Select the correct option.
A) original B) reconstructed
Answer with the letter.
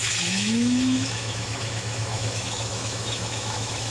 B